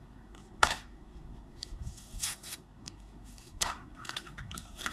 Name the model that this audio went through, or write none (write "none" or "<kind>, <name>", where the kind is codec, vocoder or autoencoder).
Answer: codec, SNAC